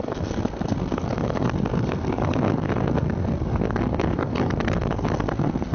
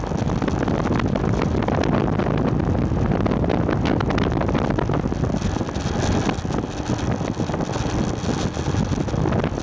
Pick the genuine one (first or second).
second